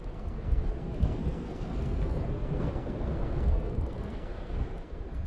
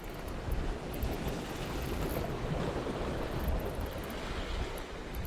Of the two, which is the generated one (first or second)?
first